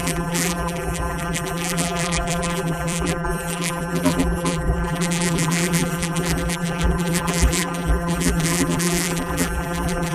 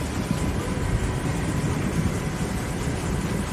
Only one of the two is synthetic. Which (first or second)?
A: first